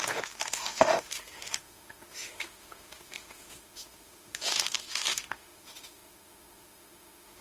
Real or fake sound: fake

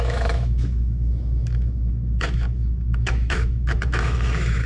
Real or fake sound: fake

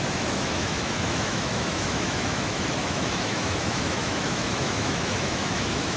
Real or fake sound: fake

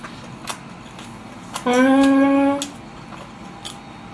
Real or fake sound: real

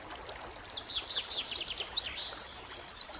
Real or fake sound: real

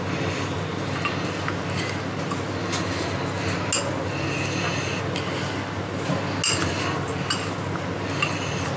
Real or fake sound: real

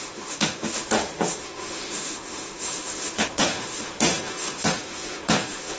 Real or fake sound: fake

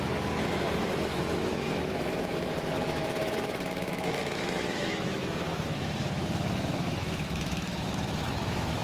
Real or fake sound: fake